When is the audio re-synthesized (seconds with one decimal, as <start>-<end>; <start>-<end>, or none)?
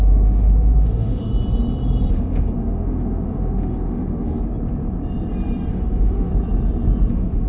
0.0-1.3; 2.1-4.3; 5.7-6.3; 7.1-7.5